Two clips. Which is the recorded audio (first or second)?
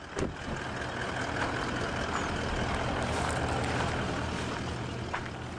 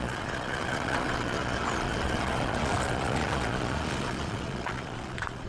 first